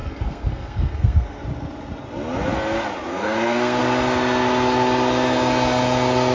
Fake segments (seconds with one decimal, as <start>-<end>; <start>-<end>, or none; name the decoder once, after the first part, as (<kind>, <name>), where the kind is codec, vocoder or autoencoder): 0.0-1.4 (codec, SNAC); 3.1-3.8